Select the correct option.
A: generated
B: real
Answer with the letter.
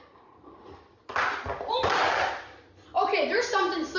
B